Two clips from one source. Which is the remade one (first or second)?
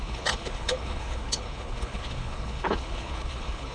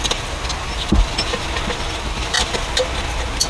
first